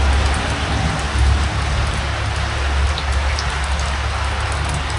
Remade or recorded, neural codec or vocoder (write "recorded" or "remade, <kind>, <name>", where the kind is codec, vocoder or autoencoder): recorded